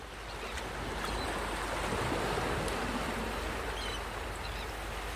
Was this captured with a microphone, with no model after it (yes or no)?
yes